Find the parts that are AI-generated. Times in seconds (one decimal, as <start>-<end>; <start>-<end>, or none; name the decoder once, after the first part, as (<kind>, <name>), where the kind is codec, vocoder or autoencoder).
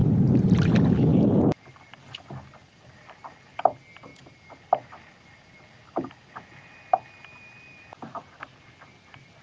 0.0-0.6 (vocoder, BigVGAN v2)